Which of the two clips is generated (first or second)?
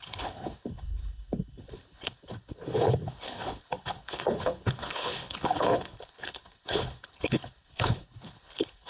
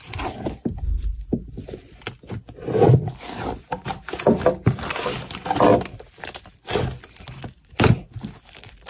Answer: first